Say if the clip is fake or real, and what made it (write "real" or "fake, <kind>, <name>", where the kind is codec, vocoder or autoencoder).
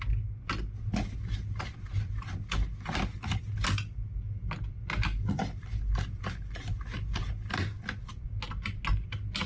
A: real